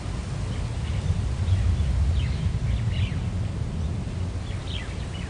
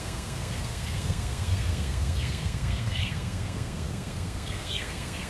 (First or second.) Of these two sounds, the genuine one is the first